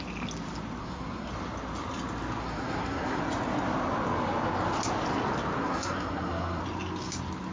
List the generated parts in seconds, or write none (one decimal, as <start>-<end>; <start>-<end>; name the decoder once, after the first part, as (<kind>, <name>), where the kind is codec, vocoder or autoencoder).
0.8-1.3 (codec, SNAC); 2.4-3.2; 5.6-6.6